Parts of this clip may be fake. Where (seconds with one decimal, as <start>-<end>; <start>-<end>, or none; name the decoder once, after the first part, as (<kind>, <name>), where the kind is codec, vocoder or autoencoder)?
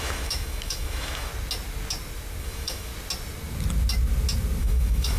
0.0-1.3 (autoencoder, DAC-VAE); 2.4-2.9; 4.6-5.2